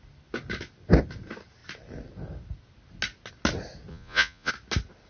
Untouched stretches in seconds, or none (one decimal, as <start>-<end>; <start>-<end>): 0.0-3.9; 4.5-5.1